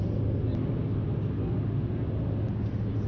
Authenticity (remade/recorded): recorded